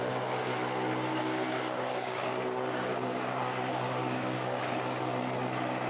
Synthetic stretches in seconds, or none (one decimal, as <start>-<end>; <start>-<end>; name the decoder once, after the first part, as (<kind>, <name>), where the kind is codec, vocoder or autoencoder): 1.1-4.6 (codec, DAC)